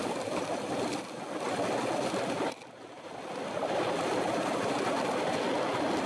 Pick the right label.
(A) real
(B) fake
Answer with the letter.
A